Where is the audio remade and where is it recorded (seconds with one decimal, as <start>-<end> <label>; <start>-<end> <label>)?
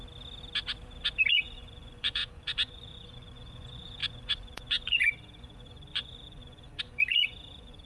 0.0-1.3 recorded; 1.3-7.9 remade